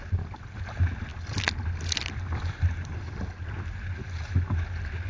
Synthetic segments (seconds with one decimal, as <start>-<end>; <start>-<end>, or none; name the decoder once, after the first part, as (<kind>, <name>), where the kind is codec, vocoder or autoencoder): none